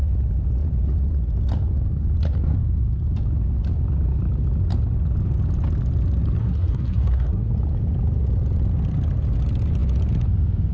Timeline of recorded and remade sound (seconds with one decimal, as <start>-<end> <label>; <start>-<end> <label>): 0.0-6.4 recorded; 6.4-7.5 remade; 7.5-10.7 recorded